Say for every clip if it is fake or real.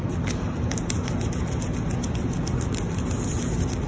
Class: real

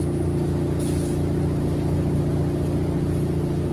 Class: real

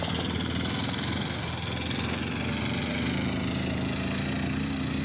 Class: real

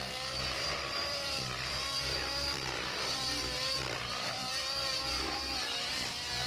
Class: fake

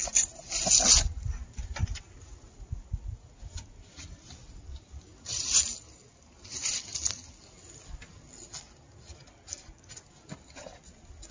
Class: real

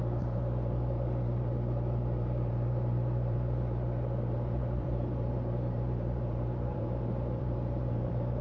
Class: fake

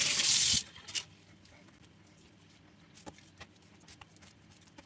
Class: fake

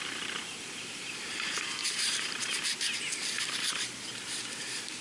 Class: fake